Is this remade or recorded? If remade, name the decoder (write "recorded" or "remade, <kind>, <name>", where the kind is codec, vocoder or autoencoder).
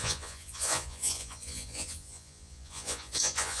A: remade, vocoder, Vocos